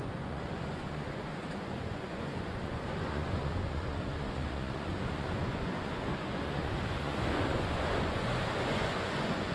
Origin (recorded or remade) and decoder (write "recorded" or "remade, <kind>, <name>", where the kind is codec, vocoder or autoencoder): remade, vocoder, Vocos